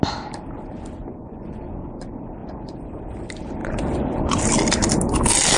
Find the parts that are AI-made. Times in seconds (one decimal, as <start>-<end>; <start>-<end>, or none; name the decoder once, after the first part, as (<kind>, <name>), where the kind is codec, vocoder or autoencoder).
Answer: 1.0-1.8 (vocoder, Vocos); 2.4-3.0; 3.6-4.4